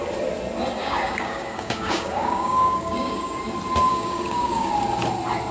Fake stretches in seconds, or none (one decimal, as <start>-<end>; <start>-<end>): 0.8-3.4; 3.9-4.7